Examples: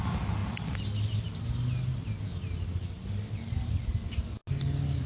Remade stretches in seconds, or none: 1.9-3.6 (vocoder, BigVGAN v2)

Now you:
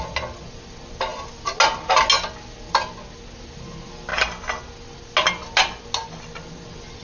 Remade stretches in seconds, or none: none

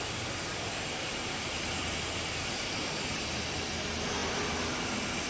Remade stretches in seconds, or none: 0.5-3.7 (vocoder, BigVGAN v2)

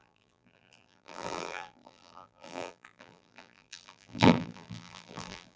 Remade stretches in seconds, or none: 0.0-5.6 (vocoder, BigVGAN v2)

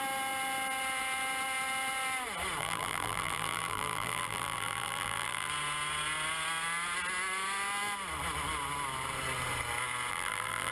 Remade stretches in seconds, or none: 2.6-5.5 (vocoder, BigVGAN v2); 10.1-10.7

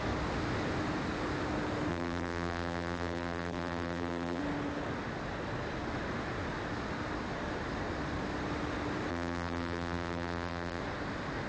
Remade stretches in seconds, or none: 1.9-4.4 (vocoder, BigVGAN v2); 9.1-10.8